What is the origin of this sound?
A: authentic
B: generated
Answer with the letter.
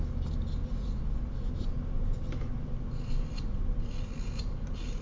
A